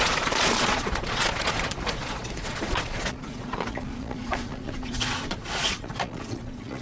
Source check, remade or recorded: remade